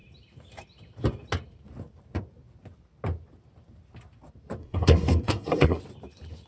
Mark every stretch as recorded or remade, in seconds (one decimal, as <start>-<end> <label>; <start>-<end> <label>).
0.0-4.6 recorded; 4.6-5.8 remade; 5.8-6.5 recorded